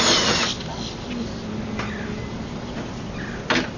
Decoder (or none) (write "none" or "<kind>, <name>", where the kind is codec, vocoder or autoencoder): none